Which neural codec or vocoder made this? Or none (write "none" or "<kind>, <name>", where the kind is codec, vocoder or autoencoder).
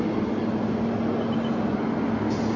none